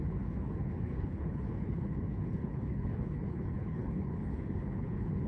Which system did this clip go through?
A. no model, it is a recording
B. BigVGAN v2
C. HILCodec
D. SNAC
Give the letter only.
C